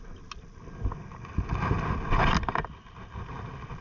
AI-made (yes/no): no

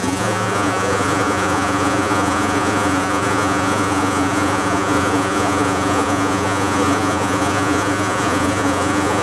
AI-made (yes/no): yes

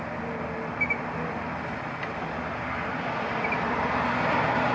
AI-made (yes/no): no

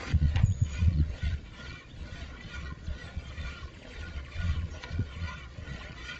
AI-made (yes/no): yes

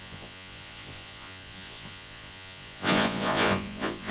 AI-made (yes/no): yes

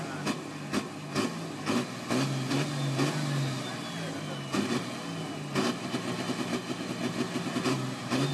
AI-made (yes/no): no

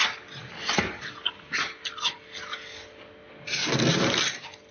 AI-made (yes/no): no